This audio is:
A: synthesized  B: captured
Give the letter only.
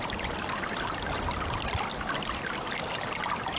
A